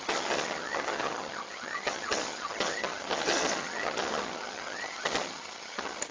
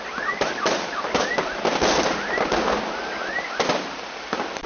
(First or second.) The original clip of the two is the second